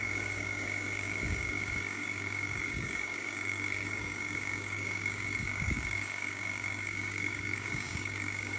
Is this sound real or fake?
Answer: fake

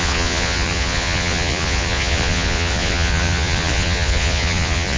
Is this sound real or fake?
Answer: fake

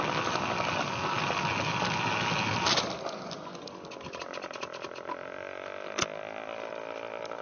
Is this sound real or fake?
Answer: real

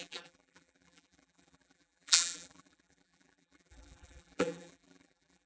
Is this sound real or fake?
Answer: fake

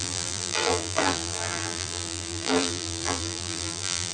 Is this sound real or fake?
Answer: fake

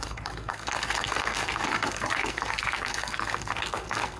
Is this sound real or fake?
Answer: fake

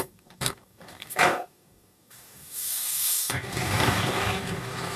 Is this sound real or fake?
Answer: fake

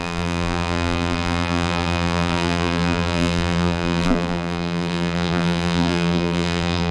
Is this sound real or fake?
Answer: fake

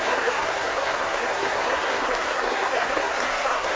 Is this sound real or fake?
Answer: fake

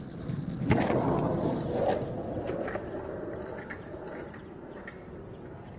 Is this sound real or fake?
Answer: real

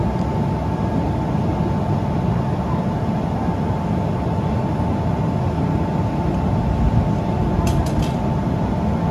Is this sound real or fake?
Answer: real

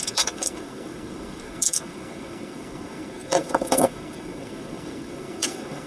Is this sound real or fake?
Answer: fake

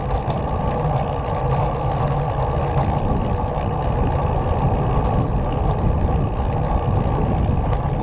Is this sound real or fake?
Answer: real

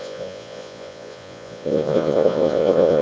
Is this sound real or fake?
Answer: fake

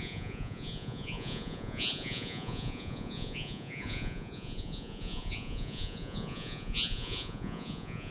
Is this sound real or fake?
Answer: fake